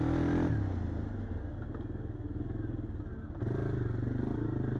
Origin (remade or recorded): recorded